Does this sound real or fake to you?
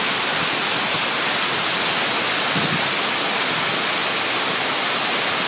real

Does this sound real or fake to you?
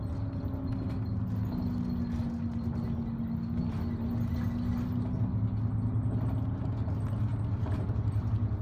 real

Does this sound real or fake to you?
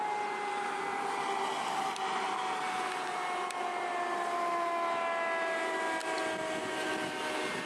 real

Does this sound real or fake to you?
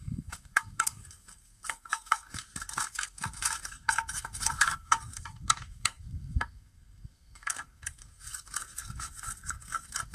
fake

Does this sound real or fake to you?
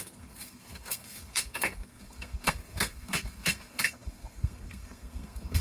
fake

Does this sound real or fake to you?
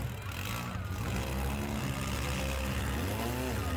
real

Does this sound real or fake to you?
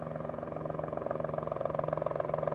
fake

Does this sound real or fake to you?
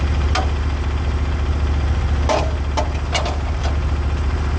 real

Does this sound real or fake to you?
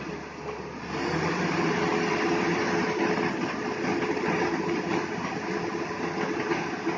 real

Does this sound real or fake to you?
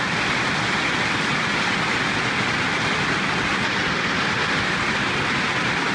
real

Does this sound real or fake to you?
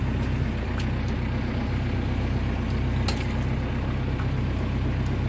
real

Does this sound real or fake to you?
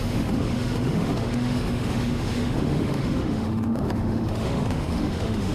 fake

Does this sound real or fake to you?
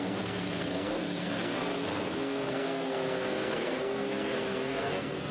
fake